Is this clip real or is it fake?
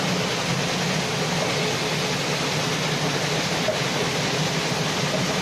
real